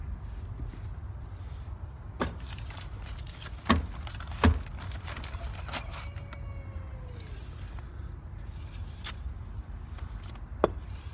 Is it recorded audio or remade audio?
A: recorded